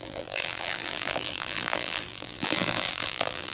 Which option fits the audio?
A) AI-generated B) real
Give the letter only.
A